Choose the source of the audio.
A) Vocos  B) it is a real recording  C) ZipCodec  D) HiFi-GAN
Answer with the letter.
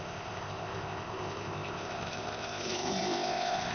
C